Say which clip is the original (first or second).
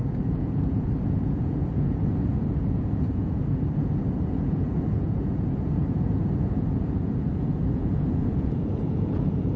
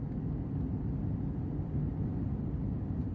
second